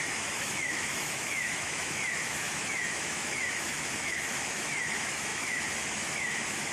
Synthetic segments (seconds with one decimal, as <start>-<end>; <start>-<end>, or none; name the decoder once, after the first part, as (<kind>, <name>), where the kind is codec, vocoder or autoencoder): 0.0-6.7 (autoencoder, DAC-VAE)